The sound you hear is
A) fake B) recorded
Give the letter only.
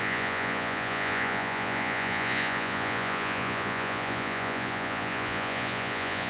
A